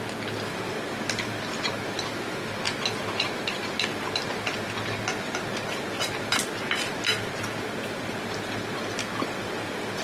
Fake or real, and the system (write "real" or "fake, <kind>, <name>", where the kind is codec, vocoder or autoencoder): real